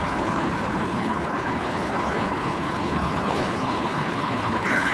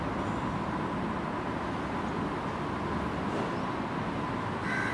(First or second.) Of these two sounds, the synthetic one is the first